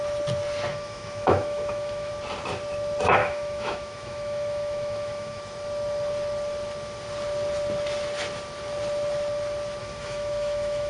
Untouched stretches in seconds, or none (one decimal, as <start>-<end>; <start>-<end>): 0.0-0.7; 2.1-3.2; 5.4-9.8